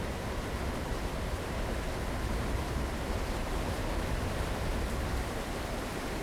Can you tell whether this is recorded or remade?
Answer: remade